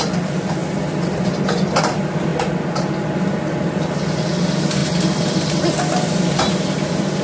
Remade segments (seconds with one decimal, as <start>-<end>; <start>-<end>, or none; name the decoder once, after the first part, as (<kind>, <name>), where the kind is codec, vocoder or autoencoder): 4.8-6.5 (vocoder, BigVGAN v2)